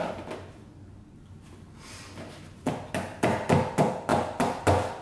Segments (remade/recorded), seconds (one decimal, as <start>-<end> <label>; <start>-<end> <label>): 0.0-5.0 recorded